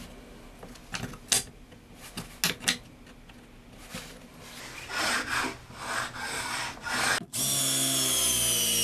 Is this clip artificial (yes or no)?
no